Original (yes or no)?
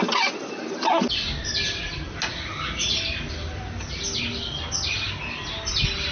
yes